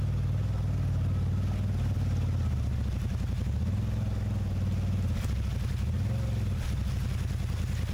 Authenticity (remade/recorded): recorded